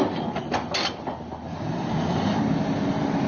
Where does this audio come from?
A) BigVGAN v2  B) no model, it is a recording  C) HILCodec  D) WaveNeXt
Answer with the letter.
B